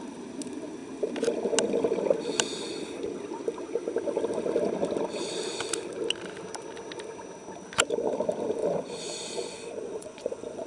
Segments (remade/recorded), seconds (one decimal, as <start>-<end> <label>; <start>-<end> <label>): 0.0-8.6 recorded; 8.6-10.7 remade